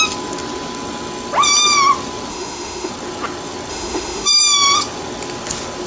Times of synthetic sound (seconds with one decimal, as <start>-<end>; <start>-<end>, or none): 2.3-2.9; 3.7-4.4